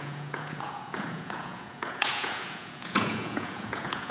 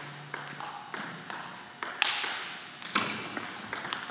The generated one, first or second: first